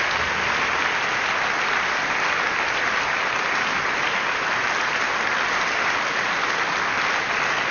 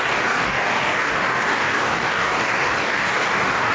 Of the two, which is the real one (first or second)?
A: first